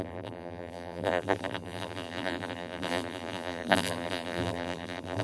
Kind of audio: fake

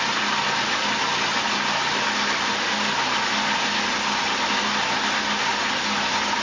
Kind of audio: real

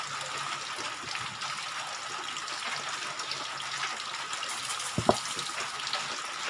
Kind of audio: real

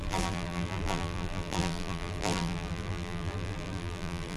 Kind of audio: fake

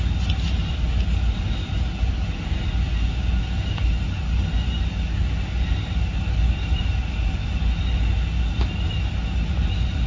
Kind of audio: real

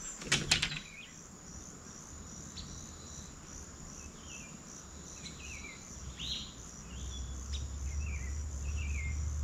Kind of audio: real